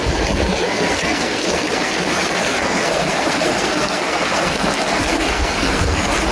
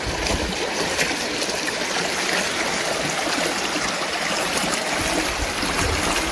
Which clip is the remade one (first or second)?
first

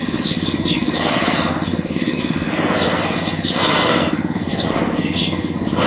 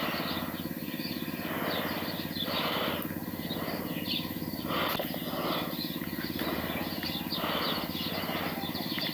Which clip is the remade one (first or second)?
first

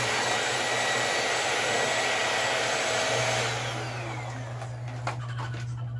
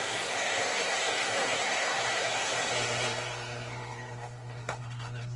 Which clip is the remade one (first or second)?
second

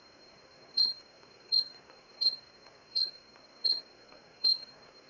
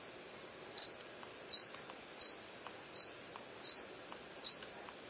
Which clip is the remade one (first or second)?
first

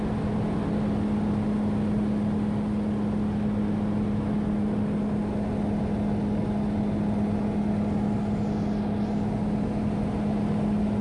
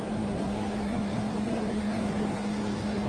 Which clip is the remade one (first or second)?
second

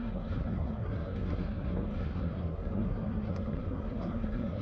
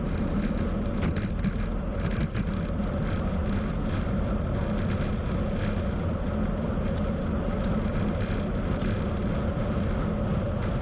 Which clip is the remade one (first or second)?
first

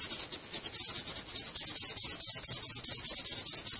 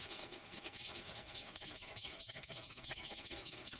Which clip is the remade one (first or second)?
second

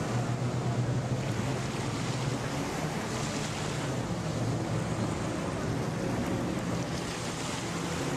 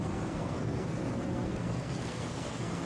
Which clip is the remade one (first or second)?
second